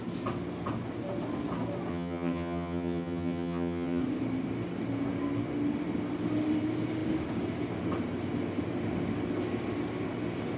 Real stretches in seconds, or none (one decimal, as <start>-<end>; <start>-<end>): 0.0-1.9; 4.0-10.6